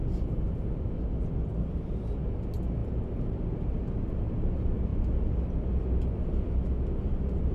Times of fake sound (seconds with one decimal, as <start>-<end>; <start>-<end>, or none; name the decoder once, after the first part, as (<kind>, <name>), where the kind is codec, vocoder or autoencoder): none